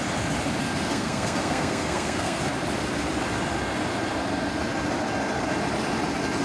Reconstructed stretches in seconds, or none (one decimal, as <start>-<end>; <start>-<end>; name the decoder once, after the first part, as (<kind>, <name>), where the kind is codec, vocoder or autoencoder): 0.9-2.4 (codec, SNAC)